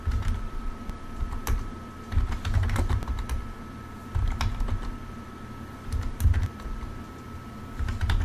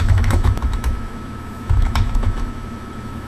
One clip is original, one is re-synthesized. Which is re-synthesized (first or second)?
second